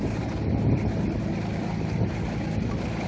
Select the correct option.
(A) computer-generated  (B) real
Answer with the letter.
B